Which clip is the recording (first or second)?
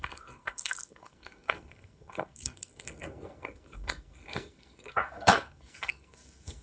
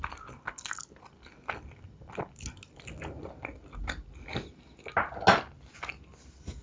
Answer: second